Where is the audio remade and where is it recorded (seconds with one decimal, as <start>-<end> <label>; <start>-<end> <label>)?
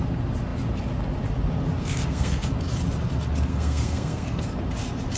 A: 0.0-1.8 recorded; 1.8-2.5 remade; 2.5-3.5 recorded; 3.5-4.6 remade; 4.6-5.2 recorded